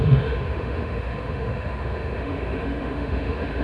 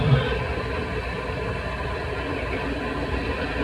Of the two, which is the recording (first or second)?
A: second